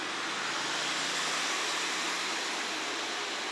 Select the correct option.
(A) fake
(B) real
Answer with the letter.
B